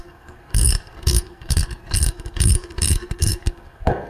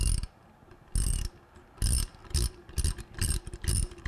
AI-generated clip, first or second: first